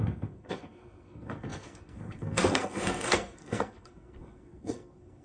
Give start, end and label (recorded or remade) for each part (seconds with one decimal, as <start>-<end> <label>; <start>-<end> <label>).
0.0-5.2 remade